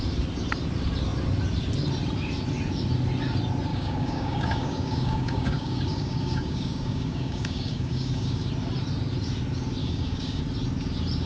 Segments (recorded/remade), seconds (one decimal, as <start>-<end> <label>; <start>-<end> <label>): 0.0-3.7 recorded; 3.7-8.5 remade; 8.5-9.8 recorded; 9.8-10.4 remade; 10.4-11.3 recorded